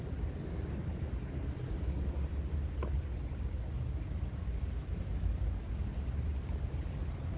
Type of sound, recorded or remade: recorded